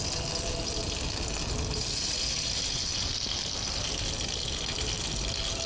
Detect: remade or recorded recorded